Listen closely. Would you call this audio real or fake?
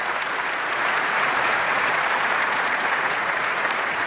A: fake